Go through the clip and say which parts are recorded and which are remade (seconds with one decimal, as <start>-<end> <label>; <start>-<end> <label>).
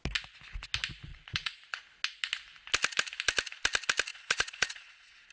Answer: 0.0-1.1 recorded; 1.1-1.8 remade; 1.8-4.1 recorded; 4.1-5.3 remade